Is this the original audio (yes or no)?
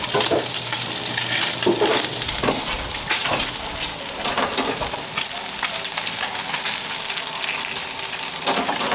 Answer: yes